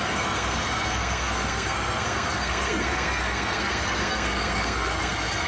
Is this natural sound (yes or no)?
no